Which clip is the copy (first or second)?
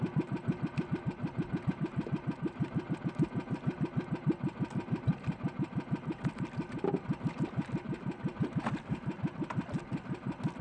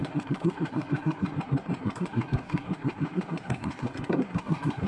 second